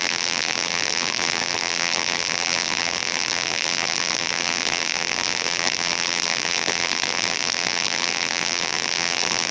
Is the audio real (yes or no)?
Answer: no